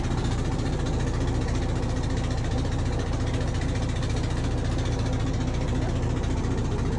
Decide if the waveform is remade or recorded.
recorded